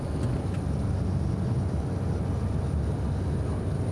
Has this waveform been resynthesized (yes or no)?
no